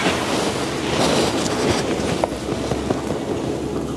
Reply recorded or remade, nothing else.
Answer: recorded